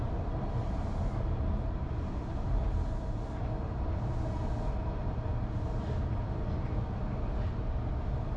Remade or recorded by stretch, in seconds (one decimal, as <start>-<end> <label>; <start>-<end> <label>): 0.0-1.8 recorded; 1.8-2.6 remade; 2.6-8.4 recorded